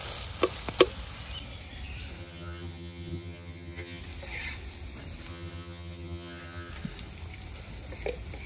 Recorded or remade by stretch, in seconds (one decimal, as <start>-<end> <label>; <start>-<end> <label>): 0.0-2.2 recorded; 2.2-4.0 remade; 4.0-5.3 recorded; 5.3-6.7 remade; 6.7-8.5 recorded